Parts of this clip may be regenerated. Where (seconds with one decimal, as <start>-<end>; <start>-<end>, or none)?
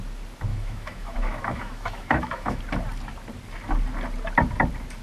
0.5-2.6